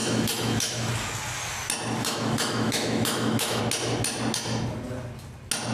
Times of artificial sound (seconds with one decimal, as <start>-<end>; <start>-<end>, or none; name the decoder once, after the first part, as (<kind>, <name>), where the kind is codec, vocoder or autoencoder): 0.0-0.9 (autoencoder, DAC-VAE); 2.0-3.6